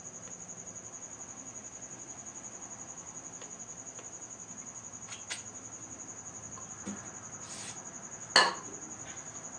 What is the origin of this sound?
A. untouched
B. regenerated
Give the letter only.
A